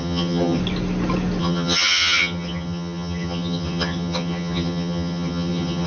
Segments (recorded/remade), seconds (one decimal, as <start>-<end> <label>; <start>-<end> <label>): 0.0-0.6 remade; 0.6-1.4 recorded; 1.4-5.9 remade